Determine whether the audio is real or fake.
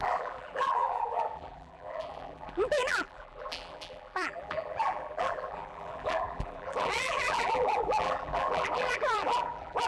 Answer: fake